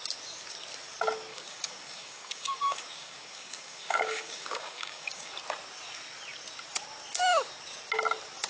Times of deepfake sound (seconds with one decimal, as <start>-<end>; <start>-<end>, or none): 1.3-5.3